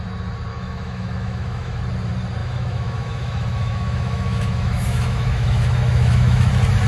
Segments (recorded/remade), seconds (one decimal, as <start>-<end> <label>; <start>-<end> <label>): 0.0-0.5 recorded; 0.5-1.8 remade; 1.8-2.4 recorded; 2.4-6.5 remade; 6.5-6.9 recorded